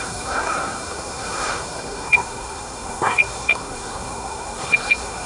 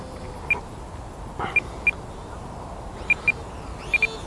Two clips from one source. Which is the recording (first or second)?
second